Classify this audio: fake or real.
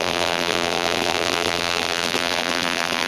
fake